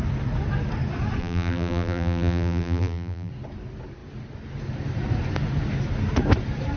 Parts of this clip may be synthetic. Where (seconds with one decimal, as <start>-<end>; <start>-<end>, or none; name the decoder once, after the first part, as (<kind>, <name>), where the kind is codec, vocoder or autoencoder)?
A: 1.2-3.3 (vocoder, BigVGAN v2)